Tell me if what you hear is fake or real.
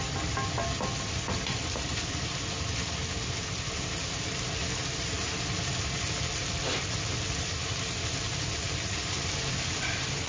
real